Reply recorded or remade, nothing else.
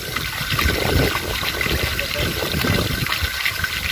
recorded